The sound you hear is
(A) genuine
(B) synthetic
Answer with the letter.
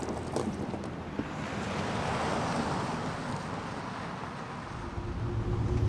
A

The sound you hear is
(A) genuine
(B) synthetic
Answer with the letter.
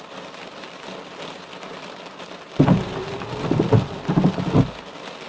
A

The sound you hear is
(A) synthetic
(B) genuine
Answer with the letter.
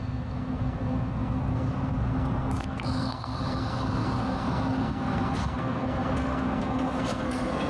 A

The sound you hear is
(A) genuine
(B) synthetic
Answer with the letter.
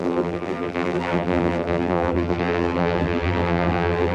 B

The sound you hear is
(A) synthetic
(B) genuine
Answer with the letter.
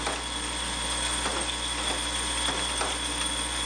B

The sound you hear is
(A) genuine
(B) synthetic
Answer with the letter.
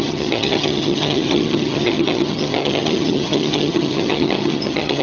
B